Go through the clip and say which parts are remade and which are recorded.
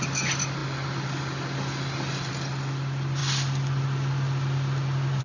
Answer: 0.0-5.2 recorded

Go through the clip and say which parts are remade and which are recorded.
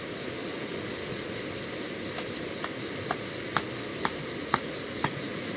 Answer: 0.0-0.4 recorded; 0.4-1.3 remade; 1.3-4.4 recorded; 4.4-5.6 remade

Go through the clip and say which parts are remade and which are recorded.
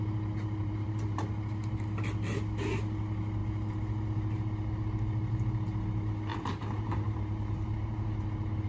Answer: 0.0-0.6 recorded; 0.6-1.2 remade; 1.2-6.3 recorded; 6.3-8.1 remade; 8.1-8.7 recorded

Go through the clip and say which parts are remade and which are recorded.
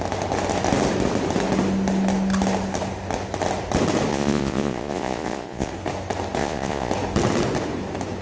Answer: 0.0-4.1 recorded; 4.1-5.7 remade; 5.7-6.4 recorded; 6.4-6.9 remade; 6.9-8.2 recorded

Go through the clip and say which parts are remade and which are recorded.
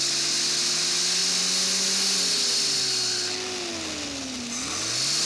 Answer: 0.0-5.3 recorded